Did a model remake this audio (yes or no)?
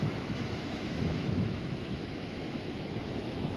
yes